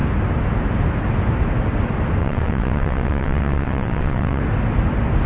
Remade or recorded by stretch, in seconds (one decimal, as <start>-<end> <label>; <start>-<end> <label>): 0.0-2.2 recorded; 2.2-4.4 remade; 4.4-5.3 recorded